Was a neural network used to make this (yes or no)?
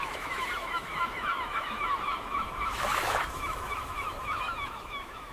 yes